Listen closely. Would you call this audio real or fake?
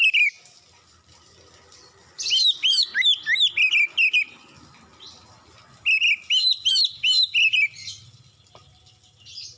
real